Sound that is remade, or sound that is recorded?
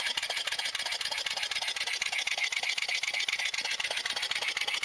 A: recorded